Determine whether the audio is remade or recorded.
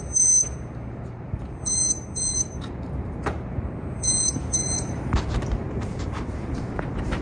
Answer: remade